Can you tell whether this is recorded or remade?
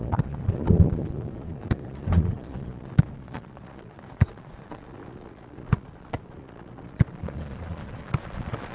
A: remade